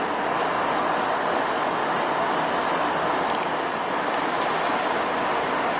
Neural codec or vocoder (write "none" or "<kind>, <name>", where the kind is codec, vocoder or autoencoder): none